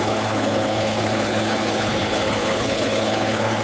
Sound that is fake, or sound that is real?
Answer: fake